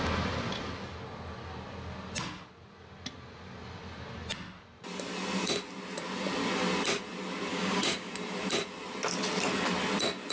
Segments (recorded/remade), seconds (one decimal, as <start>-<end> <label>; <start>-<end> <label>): 0.0-7.5 recorded; 7.5-8.1 remade; 8.1-10.3 recorded